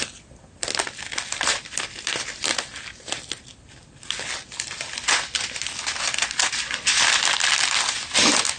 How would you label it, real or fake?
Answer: real